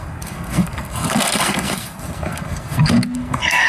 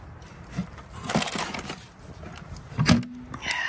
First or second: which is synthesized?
first